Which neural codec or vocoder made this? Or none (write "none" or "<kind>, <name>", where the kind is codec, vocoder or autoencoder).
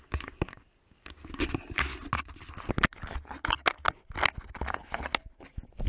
none